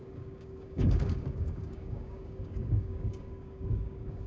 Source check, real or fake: fake